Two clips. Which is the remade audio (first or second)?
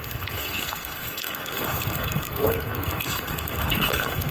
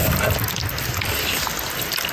first